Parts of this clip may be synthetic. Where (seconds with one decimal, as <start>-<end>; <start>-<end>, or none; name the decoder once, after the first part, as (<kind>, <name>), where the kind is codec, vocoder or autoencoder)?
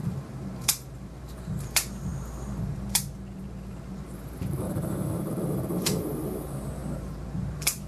0.0-7.9 (vocoder, BigVGAN v2)